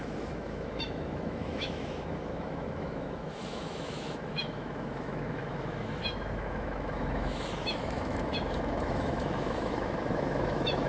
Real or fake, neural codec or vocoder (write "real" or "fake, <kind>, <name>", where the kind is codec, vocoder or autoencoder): fake, autoencoder, DAC-VAE